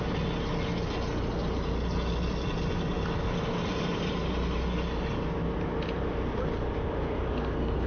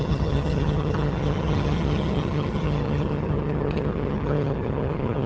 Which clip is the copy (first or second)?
second